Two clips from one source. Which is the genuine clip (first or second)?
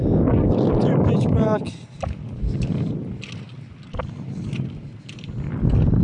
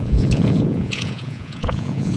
first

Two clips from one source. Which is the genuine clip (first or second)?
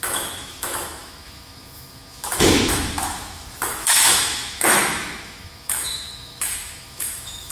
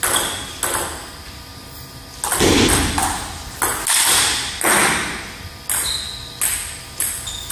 second